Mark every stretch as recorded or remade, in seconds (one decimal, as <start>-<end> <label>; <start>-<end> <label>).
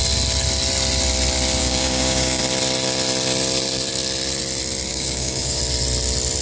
0.0-1.6 recorded; 1.6-2.4 remade; 2.4-4.9 recorded; 4.9-5.6 remade; 5.6-6.4 recorded